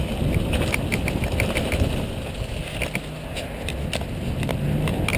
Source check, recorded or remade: recorded